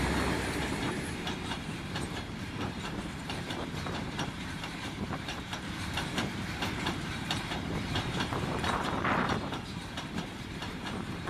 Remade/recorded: remade